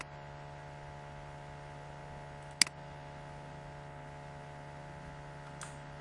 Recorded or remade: recorded